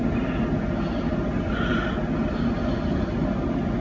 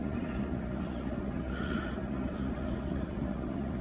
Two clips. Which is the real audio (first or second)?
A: first